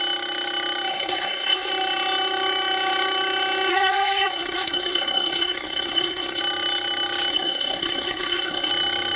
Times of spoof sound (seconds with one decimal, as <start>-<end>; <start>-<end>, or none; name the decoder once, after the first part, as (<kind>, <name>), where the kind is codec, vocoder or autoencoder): 0.9-1.7 (codec, SNAC); 3.7-6.4; 7.3-8.7